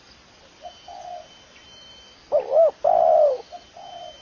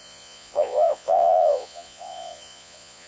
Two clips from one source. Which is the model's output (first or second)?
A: second